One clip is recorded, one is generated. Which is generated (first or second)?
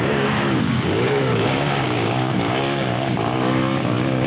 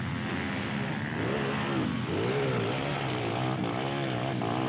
first